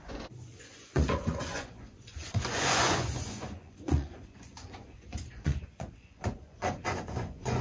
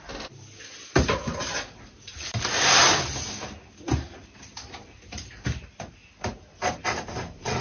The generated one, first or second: first